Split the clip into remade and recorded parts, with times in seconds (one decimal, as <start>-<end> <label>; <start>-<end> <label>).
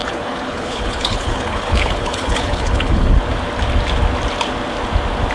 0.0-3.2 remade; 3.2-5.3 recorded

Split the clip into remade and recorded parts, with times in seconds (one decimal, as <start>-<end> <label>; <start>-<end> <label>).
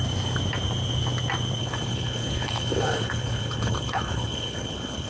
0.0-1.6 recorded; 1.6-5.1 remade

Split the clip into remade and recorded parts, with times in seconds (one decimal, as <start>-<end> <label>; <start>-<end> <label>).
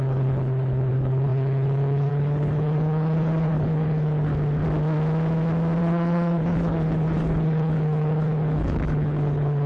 0.0-4.3 remade; 4.3-5.8 recorded; 5.8-9.7 remade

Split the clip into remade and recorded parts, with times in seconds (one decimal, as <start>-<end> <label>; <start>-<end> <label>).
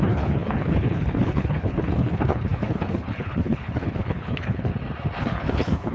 0.0-4.7 remade; 4.7-5.2 recorded; 5.2-5.9 remade